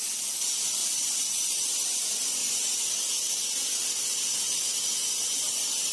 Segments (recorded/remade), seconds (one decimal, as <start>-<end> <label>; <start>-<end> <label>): 0.0-5.9 recorded